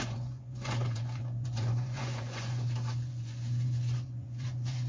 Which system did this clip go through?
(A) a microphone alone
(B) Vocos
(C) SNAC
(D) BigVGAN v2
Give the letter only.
B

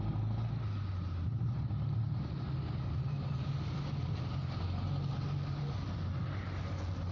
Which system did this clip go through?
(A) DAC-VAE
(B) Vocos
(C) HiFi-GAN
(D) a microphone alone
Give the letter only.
D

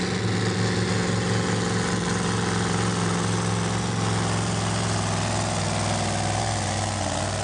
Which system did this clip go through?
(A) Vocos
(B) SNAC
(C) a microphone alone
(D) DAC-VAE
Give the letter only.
C